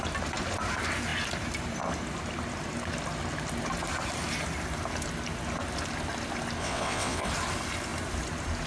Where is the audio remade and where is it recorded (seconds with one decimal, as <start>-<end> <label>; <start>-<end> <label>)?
0.0-6.6 recorded; 6.6-7.3 remade; 7.3-8.7 recorded